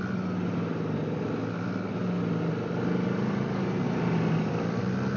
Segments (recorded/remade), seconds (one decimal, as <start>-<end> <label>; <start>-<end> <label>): 0.0-5.2 recorded